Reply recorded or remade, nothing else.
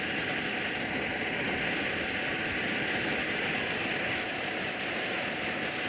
recorded